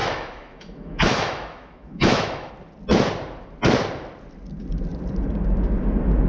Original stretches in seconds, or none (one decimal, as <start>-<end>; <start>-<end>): 2.5-6.3